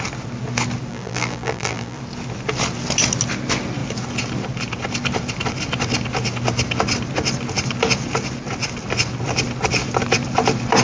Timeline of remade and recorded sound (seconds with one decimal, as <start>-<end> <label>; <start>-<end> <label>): 0.0-0.9 recorded; 0.9-2.0 remade; 2.0-10.8 recorded